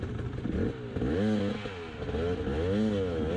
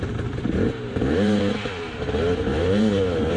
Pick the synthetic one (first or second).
second